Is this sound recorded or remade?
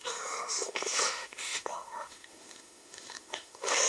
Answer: remade